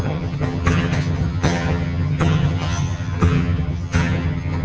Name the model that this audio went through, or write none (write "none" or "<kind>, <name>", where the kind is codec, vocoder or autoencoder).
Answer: vocoder, HiFi-GAN